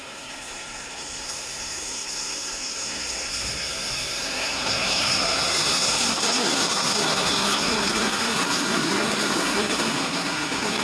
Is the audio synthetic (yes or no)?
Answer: yes